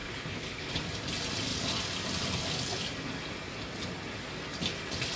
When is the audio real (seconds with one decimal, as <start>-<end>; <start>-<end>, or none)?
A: 0.8-5.2